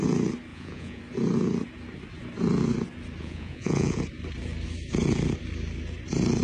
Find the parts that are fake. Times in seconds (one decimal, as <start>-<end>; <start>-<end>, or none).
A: 0.5-1.0; 3.2-4.0